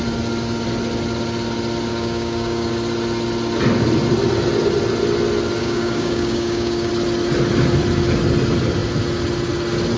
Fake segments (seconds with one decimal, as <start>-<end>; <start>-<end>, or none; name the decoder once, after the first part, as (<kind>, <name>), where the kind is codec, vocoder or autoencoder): 1.9-2.7 (codec, DAC); 5.6-6.9